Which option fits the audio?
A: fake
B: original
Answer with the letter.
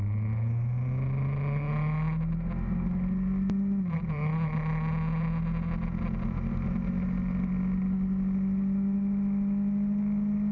B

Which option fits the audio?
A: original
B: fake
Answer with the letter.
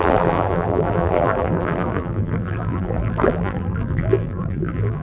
B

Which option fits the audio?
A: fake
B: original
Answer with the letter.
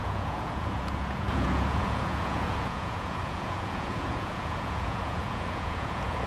A